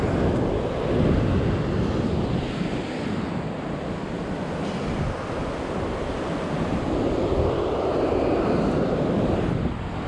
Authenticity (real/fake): real